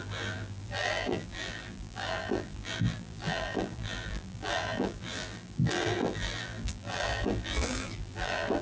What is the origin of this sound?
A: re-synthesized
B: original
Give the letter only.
A